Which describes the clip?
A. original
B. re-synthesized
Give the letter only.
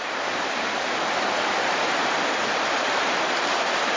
B